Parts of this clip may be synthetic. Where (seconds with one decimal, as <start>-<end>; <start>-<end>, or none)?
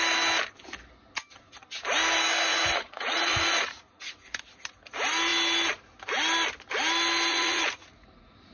2.5-4.1; 7.3-8.5